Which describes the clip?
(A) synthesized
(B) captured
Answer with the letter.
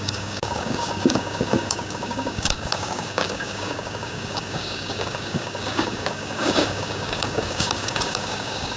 A